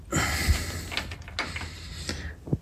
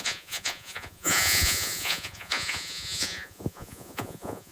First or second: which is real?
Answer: first